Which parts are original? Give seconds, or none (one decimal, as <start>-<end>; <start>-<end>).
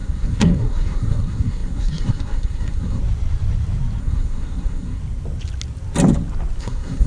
3.0-4.0; 5.0-6.6